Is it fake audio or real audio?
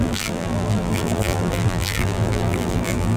fake